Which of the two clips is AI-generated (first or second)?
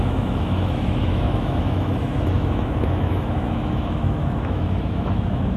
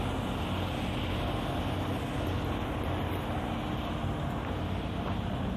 first